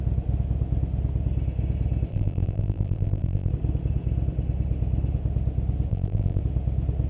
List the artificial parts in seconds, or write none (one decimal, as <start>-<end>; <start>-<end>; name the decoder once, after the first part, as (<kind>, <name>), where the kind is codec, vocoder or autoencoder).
2.1-3.5 (vocoder, BigVGAN v2); 5.9-6.4

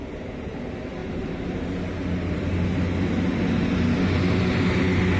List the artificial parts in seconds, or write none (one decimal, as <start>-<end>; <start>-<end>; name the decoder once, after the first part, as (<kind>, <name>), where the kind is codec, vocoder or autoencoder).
1.0-1.6 (vocoder, BigVGAN v2); 2.0-3.4

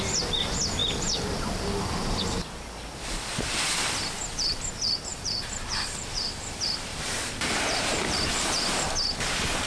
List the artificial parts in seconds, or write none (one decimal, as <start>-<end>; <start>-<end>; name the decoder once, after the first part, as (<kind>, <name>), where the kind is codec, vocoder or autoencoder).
5.1-8.4 (vocoder, BigVGAN v2)

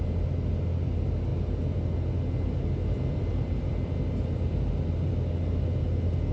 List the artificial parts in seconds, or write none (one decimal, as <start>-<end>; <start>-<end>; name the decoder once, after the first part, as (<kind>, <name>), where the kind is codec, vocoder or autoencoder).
none

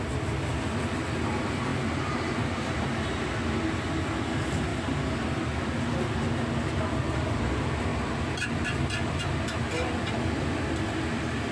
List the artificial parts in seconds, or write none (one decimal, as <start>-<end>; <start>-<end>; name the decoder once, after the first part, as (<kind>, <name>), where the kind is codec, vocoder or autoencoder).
1.7-3.4 (vocoder, BigVGAN v2); 4.7-5.2; 7.9-9.2